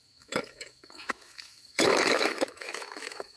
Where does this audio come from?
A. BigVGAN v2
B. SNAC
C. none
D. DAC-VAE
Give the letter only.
D